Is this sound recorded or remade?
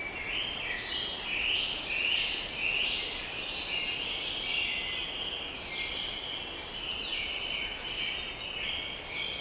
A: recorded